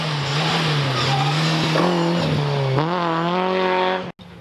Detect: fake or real real